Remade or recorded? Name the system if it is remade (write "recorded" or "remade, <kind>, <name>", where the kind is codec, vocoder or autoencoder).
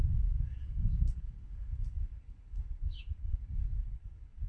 remade, codec, DAC